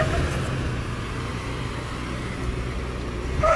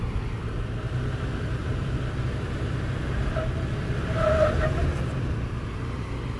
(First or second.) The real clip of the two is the first